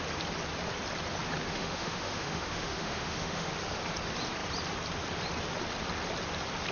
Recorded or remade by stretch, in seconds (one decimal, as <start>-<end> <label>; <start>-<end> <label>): 0.0-1.5 recorded; 1.5-3.5 remade; 3.5-6.7 recorded